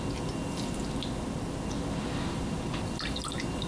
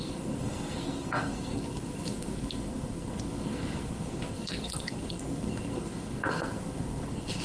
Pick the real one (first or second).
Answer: first